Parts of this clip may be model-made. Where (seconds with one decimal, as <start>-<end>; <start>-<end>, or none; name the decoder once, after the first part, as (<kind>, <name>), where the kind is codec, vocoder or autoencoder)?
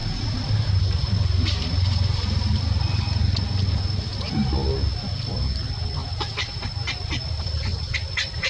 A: none